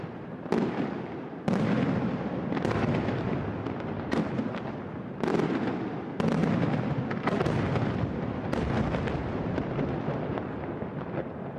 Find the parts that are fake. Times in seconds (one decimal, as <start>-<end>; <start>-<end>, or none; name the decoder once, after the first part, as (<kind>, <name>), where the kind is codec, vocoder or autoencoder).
none